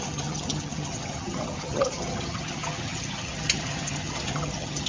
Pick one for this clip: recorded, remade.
remade